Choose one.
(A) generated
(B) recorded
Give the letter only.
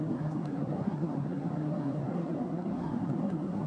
A